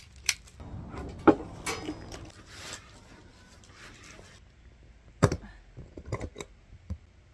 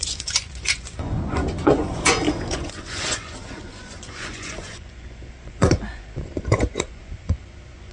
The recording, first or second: first